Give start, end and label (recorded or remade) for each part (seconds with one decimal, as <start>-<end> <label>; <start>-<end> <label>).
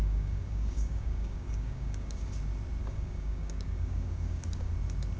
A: 0.0-2.3 remade; 2.3-2.8 recorded; 2.8-4.7 remade; 4.7-5.2 recorded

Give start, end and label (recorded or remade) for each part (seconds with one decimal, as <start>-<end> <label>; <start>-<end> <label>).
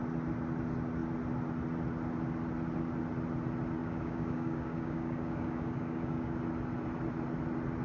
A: 0.0-3.8 recorded; 3.8-6.4 remade; 6.4-7.8 recorded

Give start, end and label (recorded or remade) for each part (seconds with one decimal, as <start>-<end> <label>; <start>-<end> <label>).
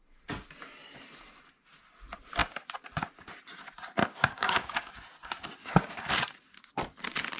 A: 0.0-4.0 recorded; 4.0-4.9 remade; 4.9-5.6 recorded; 5.6-6.1 remade; 6.1-7.4 recorded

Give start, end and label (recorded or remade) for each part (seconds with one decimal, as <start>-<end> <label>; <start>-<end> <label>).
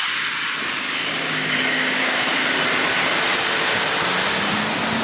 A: 0.0-0.7 recorded; 0.7-2.4 remade; 2.4-5.0 recorded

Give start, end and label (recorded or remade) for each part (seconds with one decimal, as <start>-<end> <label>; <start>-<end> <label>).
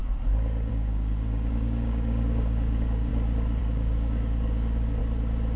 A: 0.0-0.7 recorded; 0.7-3.1 remade; 3.1-3.6 recorded; 3.6-5.0 remade; 5.0-5.6 recorded